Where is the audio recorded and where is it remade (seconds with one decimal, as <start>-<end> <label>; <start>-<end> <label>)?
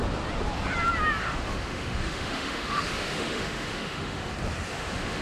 0.0-1.2 recorded; 1.2-4.3 remade; 4.3-4.7 recorded; 4.7-5.2 remade